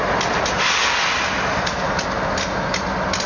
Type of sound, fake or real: real